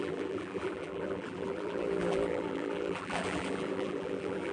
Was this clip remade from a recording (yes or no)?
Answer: yes